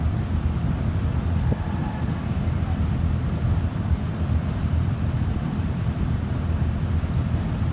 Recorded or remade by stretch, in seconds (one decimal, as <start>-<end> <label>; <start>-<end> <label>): 0.0-1.8 recorded; 1.8-5.8 remade; 5.8-7.7 recorded